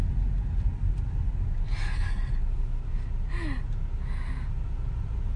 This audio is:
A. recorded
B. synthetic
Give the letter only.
A